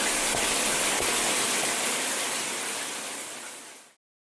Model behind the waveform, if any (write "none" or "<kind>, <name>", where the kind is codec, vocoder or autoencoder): none